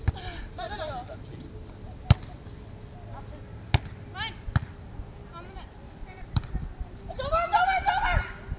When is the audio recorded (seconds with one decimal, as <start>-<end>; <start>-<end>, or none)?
0.0-6.0; 6.5-8.6